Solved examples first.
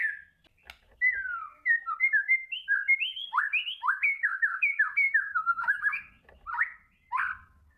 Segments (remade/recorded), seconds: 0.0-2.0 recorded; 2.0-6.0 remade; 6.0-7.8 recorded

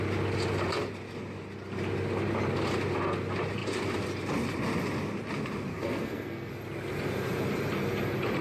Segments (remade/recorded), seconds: 0.0-5.7 recorded; 5.7-6.5 remade; 6.5-8.4 recorded

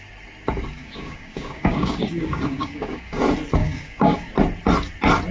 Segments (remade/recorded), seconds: 0.0-0.8 recorded; 0.8-3.2 remade; 3.2-3.6 recorded; 3.6-4.3 remade; 4.3-5.3 recorded

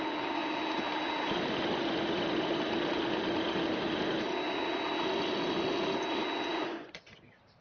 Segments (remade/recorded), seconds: 0.0-6.5 recorded; 6.5-7.0 remade; 7.0-7.6 recorded

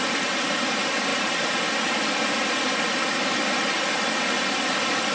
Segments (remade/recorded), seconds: 0.0-5.1 recorded